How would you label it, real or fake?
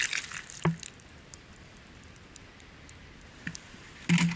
real